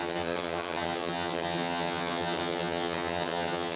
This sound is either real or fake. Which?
fake